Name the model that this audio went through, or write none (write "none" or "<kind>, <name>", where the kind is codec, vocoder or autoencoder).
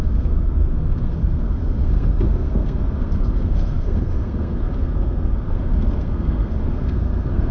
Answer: codec, SNAC